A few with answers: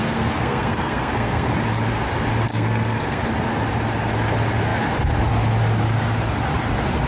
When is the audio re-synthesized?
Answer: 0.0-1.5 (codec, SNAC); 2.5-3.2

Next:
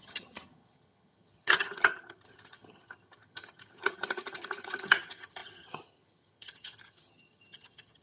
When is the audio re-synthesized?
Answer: 0.0-8.0 (vocoder, HiFi-GAN)

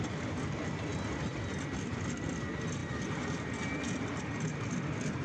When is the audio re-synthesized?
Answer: 2.8-4.2 (vocoder, BigVGAN v2)

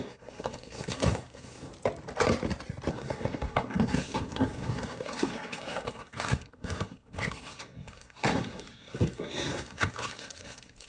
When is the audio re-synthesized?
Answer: 0.0-1.7 (codec, SNAC); 2.9-10.9

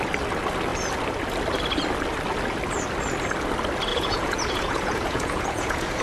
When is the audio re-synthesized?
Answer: 3.9-6.0 (vocoder, Vocos)

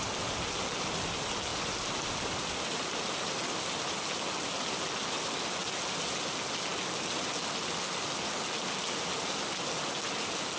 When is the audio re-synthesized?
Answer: none

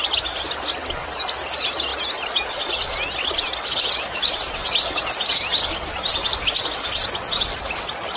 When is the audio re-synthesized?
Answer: none

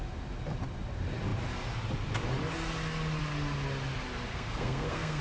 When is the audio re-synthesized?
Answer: 4.3-5.2 (codec, SNAC)